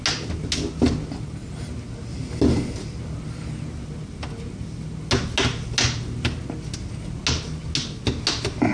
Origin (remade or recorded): recorded